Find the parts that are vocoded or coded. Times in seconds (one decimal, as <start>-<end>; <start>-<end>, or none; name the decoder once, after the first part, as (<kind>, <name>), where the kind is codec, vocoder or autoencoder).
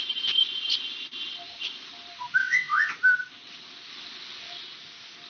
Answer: 2.4-2.9 (vocoder, WaveNeXt)